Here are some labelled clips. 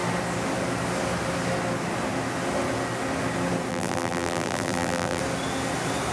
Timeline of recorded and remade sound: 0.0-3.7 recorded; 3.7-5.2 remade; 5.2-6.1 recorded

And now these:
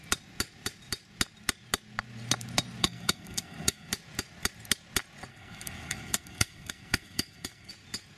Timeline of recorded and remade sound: 0.0-2.8 recorded; 2.8-3.9 remade; 3.9-5.3 recorded; 5.3-7.7 remade; 7.7-8.2 recorded

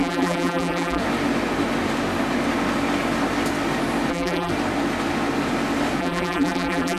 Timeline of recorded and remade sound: 0.0-1.0 remade; 1.0-4.1 recorded; 4.1-4.5 remade; 4.5-6.0 recorded; 6.0-7.0 remade

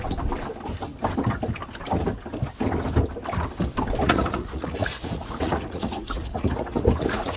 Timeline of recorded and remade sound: 0.0-4.0 recorded; 4.0-7.4 remade

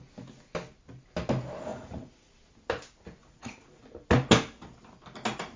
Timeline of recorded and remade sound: 0.0-1.7 recorded; 1.7-2.3 remade; 2.3-3.2 recorded; 3.2-3.8 remade; 3.8-5.6 recorded

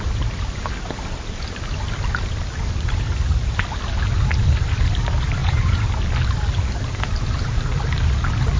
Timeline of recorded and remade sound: 0.0-5.4 recorded; 5.4-5.9 remade; 5.9-8.6 recorded

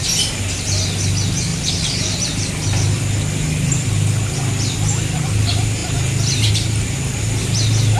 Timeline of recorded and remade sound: 0.0-1.5 recorded; 1.5-2.5 remade; 2.5-8.0 recorded

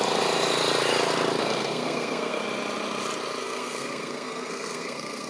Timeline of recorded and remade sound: 0.0-1.4 recorded; 1.4-2.4 remade; 2.4-3.4 recorded; 3.4-5.3 remade